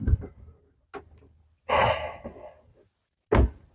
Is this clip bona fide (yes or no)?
yes